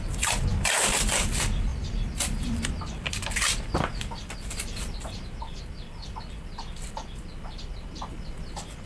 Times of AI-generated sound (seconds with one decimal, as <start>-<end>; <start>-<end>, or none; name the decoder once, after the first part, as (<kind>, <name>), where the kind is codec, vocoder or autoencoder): 1.7-5.6 (vocoder, BigVGAN v2)